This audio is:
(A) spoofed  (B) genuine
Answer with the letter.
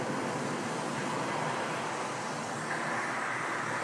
B